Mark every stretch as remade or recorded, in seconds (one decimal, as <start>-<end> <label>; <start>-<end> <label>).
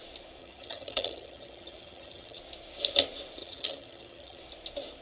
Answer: 0.0-0.4 recorded; 0.4-2.4 remade; 2.4-3.4 recorded; 3.4-4.4 remade; 4.4-5.0 recorded